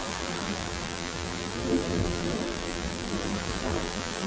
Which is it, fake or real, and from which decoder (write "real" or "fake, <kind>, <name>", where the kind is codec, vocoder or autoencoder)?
fake, vocoder, BigVGAN v2